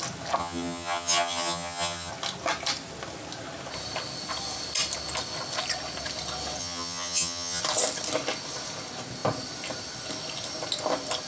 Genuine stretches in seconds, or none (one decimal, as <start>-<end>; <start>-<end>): 0.0-0.4; 2.1-6.6; 7.6-11.3

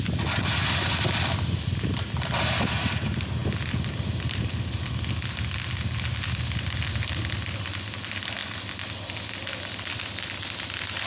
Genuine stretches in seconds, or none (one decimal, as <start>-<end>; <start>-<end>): 0.0-11.1

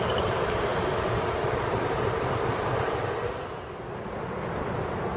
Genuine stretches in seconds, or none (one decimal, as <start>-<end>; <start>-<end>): 0.0-5.2

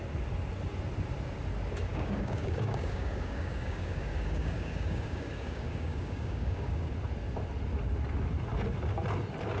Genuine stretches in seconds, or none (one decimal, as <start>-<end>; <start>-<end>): 0.0-1.9; 6.9-9.6

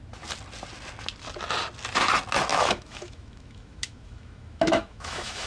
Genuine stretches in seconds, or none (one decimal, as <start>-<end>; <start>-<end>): 0.0-2.5